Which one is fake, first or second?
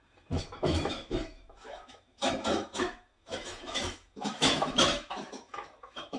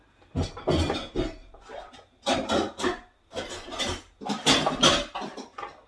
first